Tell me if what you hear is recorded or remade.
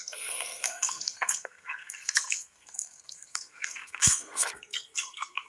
remade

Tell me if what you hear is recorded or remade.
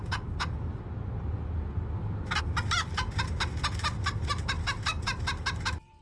recorded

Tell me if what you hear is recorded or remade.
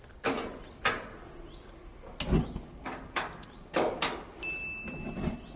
recorded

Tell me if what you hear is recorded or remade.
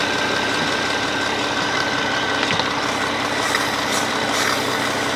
recorded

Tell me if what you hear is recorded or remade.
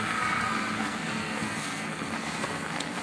remade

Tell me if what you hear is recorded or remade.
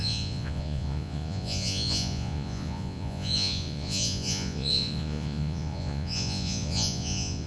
remade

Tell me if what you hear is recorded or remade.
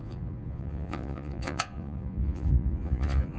remade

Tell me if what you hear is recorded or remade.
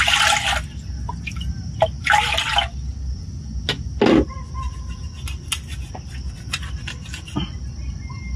recorded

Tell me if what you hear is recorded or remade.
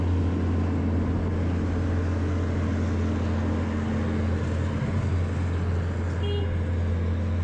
recorded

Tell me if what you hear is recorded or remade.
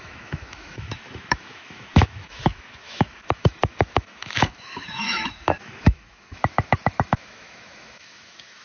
remade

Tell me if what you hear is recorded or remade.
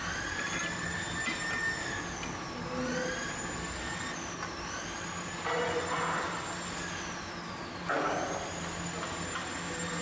recorded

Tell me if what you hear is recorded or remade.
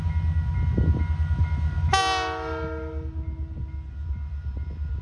recorded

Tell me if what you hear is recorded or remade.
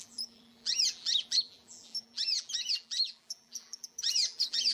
remade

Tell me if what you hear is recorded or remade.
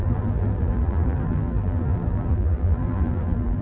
remade